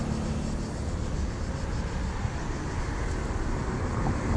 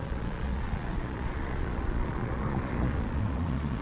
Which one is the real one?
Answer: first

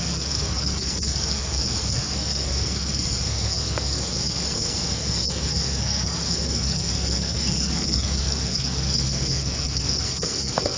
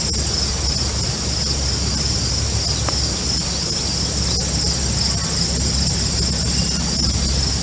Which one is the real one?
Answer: second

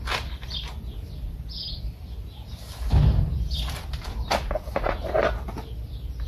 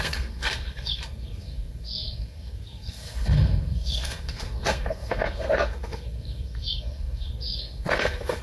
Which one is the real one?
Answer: first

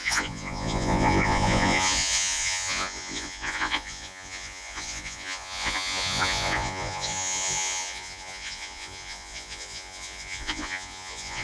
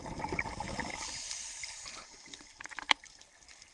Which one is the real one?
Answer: second